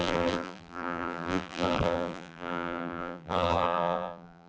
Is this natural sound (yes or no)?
no